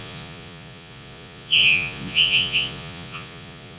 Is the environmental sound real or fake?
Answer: fake